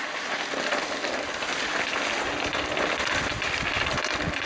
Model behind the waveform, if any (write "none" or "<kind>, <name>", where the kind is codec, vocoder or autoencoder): none